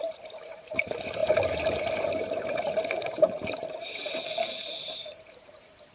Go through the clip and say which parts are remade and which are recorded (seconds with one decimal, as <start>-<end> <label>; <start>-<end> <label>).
0.0-5.9 remade